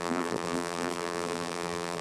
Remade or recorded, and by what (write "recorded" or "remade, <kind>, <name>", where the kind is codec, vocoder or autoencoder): remade, vocoder, BigVGAN v2